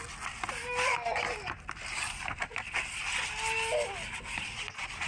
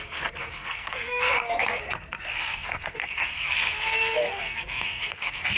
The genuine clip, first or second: first